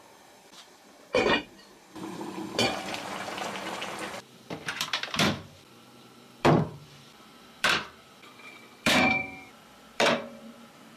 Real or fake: fake